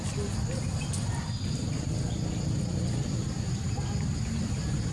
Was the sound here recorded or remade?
recorded